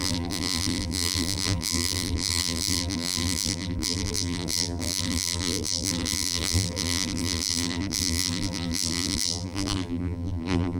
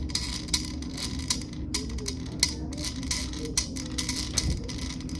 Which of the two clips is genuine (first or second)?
second